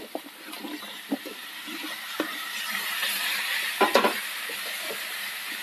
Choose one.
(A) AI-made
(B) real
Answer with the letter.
A